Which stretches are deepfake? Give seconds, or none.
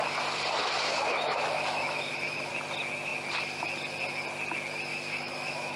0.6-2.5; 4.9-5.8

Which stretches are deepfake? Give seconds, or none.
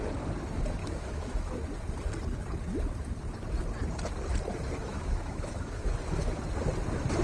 0.8-1.6; 4.8-5.9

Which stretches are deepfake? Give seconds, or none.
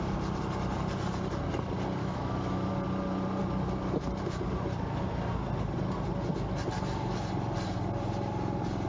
2.0-2.7